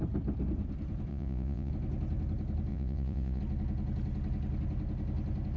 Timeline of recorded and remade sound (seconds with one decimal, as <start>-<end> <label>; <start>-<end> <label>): 0.0-1.1 recorded; 1.1-1.7 remade; 1.7-2.7 recorded; 2.7-3.4 remade; 3.4-5.6 recorded